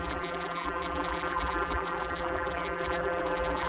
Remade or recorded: remade